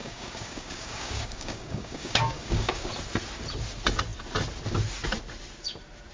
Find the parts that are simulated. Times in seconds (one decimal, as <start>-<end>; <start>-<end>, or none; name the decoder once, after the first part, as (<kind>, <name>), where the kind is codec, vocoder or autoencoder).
0.0-2.9 (codec, DAC)